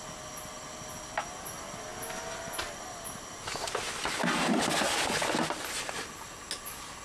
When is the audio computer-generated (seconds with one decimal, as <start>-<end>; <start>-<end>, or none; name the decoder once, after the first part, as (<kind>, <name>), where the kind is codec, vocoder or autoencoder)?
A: none